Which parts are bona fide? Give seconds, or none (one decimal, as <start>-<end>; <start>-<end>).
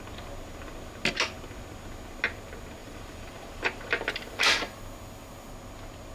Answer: 0.0-2.8; 4.8-6.1